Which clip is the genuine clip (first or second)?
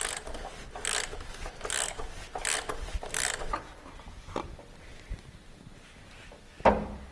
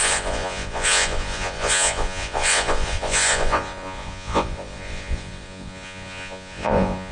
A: first